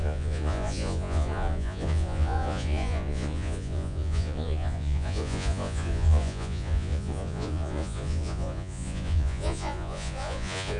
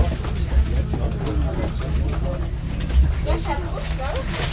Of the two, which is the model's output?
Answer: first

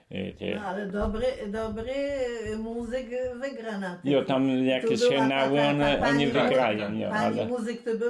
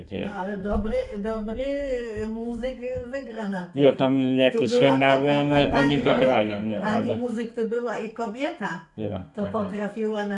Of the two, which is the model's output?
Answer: second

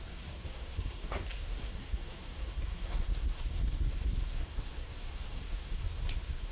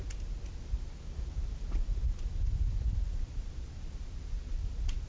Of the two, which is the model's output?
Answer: first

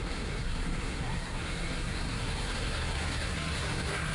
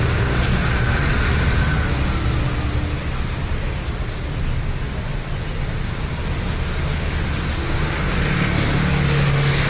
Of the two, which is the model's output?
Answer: first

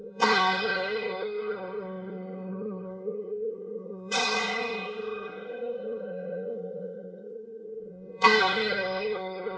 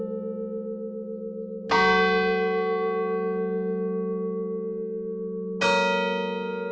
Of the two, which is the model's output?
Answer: first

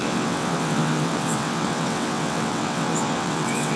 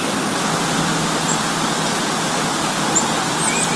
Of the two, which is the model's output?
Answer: first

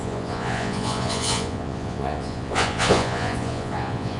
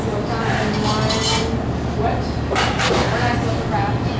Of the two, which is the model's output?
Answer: first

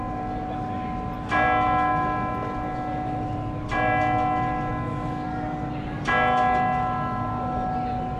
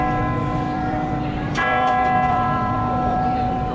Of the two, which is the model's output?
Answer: second